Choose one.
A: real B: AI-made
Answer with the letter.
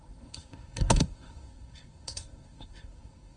B